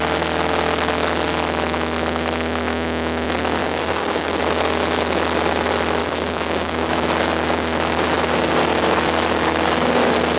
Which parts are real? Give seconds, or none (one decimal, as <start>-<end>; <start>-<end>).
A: 0.0-3.6; 4.4-6.0; 6.9-10.4